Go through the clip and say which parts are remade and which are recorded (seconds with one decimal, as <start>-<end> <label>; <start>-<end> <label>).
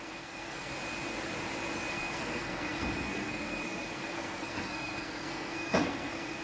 0.0-0.7 remade; 0.7-1.9 recorded; 1.9-6.4 remade